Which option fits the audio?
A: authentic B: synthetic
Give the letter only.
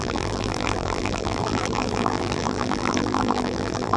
B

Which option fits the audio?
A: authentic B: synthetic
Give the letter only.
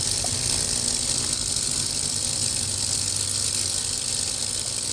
A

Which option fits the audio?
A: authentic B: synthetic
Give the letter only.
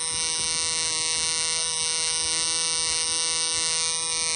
A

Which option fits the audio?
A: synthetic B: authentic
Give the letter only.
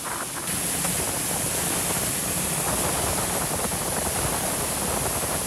B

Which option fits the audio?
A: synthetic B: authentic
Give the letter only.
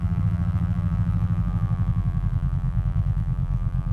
A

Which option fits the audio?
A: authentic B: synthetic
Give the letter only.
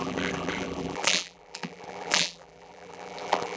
B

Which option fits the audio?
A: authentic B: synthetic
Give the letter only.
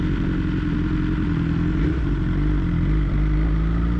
A